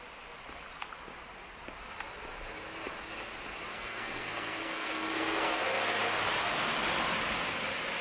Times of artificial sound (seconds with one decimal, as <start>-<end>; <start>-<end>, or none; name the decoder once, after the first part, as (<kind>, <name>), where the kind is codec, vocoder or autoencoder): 3.7-5.6 (codec, SNAC)